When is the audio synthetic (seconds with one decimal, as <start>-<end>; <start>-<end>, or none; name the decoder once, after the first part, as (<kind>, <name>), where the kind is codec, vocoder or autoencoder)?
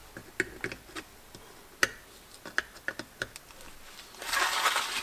none